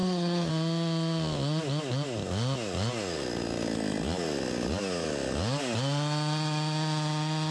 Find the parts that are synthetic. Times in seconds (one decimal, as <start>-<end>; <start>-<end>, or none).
0.0-0.5